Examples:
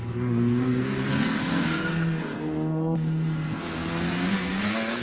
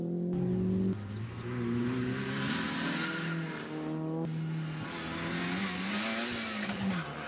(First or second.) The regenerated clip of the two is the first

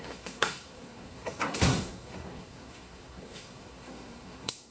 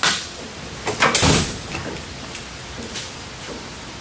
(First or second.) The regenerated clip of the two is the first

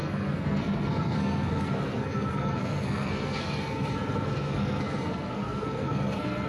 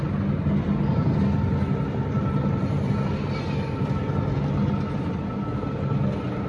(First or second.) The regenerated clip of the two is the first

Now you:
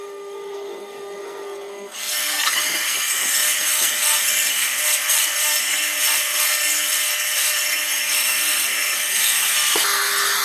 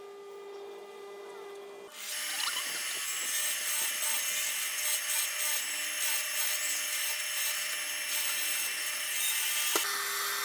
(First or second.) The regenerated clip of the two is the first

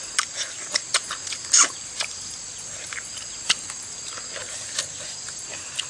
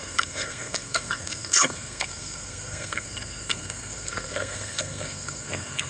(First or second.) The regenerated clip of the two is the second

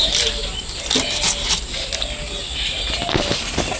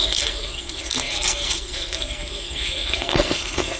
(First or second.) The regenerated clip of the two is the second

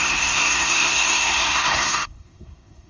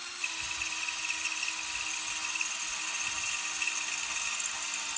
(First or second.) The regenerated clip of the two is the first